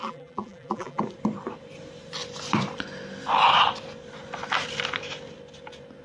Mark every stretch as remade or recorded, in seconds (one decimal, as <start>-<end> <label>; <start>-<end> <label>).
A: 0.0-1.0 remade; 1.0-6.0 recorded